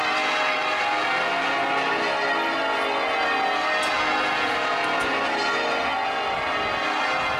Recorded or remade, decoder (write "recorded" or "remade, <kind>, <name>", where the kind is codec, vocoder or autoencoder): recorded